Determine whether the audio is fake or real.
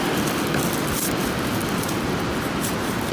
real